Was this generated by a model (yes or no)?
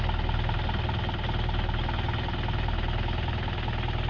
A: no